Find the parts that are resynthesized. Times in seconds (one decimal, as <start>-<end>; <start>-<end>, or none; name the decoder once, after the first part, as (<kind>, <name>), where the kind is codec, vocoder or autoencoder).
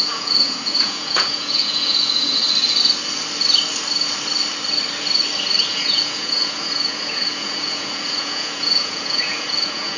0.0-2.4 (vocoder, Vocos); 5.7-10.0